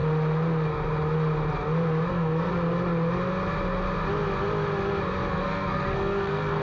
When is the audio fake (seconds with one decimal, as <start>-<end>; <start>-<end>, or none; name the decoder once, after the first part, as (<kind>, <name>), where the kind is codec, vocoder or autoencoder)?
2.1-2.5 (codec, SNAC); 5.3-6.6